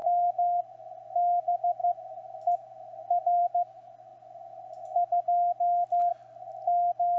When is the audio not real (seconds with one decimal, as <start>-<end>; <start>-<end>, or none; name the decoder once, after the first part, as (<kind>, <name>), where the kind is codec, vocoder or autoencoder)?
none